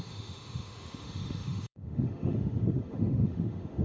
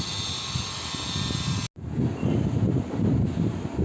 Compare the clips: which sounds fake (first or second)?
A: first